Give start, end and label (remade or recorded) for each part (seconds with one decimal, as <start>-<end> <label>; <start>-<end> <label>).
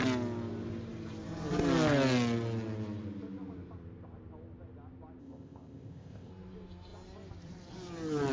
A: 0.0-5.2 recorded; 5.2-6.3 remade; 6.3-8.3 recorded